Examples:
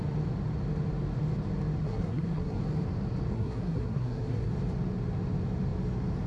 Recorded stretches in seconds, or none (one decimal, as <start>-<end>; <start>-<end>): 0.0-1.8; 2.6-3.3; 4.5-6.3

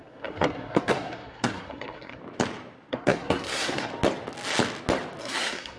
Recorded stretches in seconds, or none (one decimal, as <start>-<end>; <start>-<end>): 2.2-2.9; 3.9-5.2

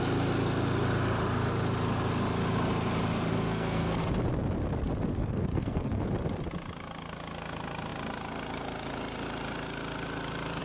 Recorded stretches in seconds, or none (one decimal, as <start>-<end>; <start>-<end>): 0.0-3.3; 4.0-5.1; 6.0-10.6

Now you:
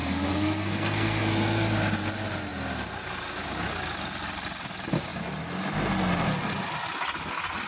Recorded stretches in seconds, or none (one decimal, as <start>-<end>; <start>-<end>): 1.2-7.7